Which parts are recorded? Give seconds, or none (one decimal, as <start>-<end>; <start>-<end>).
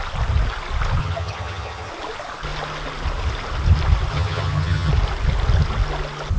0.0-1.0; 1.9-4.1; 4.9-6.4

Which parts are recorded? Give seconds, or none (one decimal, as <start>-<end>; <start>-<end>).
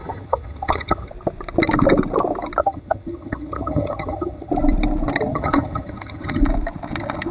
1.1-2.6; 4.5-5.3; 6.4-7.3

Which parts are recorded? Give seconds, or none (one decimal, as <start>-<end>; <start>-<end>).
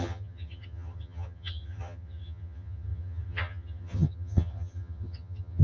none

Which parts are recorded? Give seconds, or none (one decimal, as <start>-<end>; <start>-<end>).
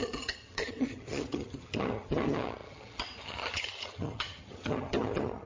none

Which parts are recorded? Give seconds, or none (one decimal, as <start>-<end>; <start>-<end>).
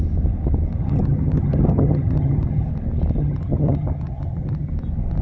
0.0-0.8; 2.7-3.2; 4.7-5.2